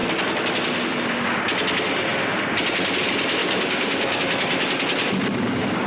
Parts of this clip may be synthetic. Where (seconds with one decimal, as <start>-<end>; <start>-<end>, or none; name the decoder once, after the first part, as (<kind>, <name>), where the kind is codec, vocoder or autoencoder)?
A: 3.4-4.2 (codec, DAC); 5.3-5.9

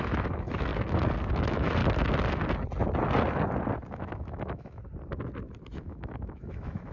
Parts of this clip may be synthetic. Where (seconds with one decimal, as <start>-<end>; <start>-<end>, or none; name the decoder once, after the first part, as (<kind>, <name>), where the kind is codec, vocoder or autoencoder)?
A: 0.0-0.7 (autoencoder, DAC-VAE); 1.3-1.8; 3.9-4.8; 5.8-6.9

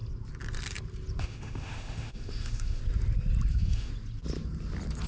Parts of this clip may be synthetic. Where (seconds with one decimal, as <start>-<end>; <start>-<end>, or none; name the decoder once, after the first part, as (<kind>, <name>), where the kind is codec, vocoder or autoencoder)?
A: 1.2-2.8 (autoencoder, DAC-VAE); 3.5-3.9

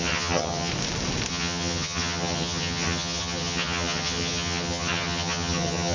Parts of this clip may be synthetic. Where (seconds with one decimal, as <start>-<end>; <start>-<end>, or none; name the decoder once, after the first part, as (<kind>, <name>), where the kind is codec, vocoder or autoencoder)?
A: 0.0-0.7 (vocoder, HiFi-GAN); 1.3-5.9